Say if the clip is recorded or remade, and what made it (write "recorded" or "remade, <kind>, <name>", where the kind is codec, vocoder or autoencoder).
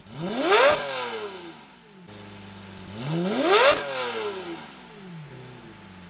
recorded